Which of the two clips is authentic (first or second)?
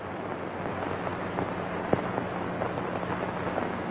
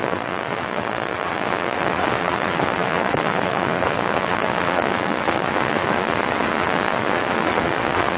first